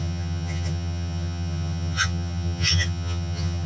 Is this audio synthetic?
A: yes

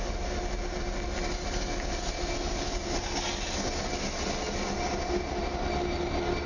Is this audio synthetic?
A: no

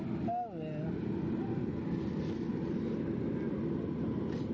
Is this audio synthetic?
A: no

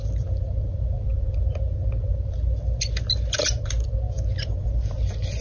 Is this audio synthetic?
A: no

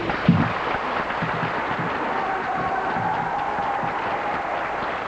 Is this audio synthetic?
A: no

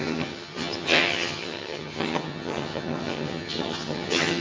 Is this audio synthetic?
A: yes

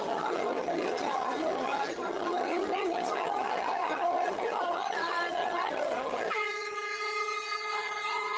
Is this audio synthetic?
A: yes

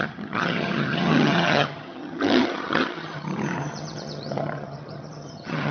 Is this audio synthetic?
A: yes